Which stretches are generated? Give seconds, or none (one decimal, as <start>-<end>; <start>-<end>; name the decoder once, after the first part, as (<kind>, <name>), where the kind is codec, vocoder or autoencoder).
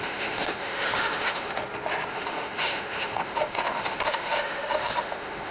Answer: 0.0-1.6 (autoencoder, DAC-VAE); 2.1-5.5